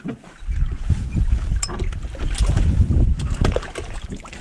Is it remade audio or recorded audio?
recorded